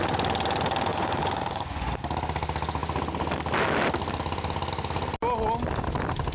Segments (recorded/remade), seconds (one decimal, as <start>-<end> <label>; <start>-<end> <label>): 0.0-0.9 recorded; 0.9-1.9 remade; 1.9-6.3 recorded